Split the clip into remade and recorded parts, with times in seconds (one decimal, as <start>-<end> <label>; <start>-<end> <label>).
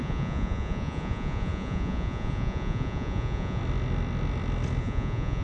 0.0-3.6 remade; 3.6-4.8 recorded; 4.8-5.4 remade